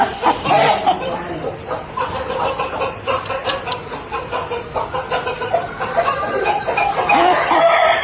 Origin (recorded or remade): remade